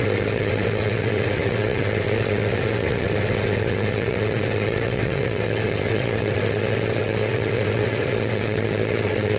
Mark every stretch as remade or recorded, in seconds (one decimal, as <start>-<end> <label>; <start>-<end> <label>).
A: 0.0-9.4 remade